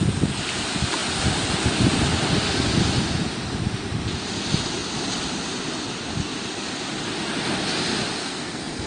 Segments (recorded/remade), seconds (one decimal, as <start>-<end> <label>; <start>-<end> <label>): 0.0-8.2 recorded; 8.2-8.9 remade